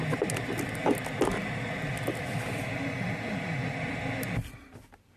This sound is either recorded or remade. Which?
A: recorded